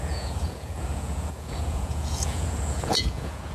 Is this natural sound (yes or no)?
no